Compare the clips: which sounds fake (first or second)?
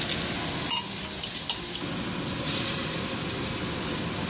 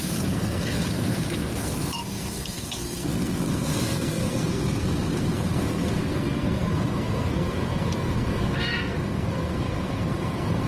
second